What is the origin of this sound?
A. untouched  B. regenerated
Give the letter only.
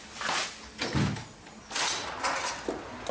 A